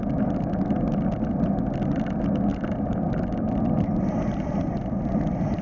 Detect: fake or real real